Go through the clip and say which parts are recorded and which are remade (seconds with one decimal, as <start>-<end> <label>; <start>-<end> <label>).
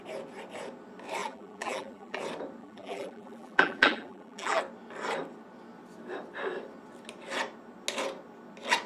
0.0-1.2 recorded; 1.2-2.2 remade; 2.2-2.6 recorded; 2.6-4.6 remade; 4.6-8.9 recorded